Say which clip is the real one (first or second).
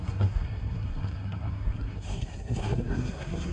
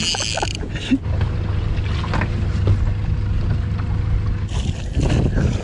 second